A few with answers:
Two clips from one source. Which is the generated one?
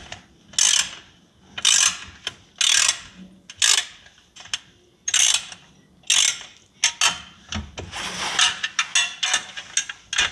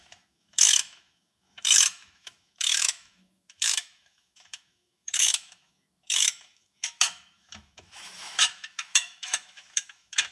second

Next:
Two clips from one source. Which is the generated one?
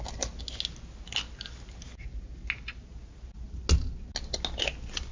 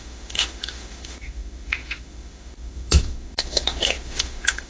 second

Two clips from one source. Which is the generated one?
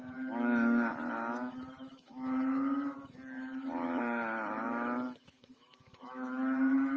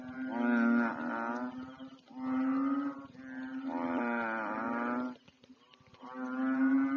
first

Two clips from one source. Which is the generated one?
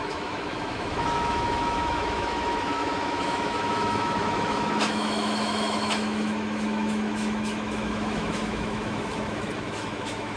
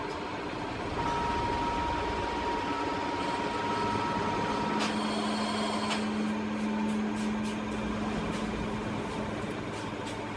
first